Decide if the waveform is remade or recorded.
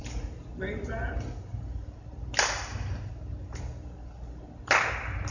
recorded